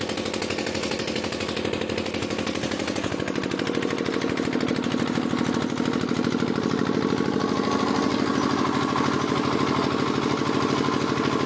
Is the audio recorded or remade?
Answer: recorded